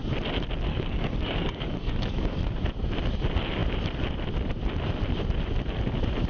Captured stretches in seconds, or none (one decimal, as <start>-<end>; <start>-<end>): 0.0-0.7; 2.5-6.3